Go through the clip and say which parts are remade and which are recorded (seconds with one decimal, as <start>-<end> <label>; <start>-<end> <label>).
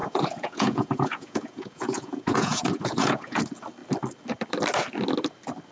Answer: 0.0-3.4 remade; 3.4-5.7 recorded